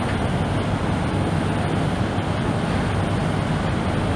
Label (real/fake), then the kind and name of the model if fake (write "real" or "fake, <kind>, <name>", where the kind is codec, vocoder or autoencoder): real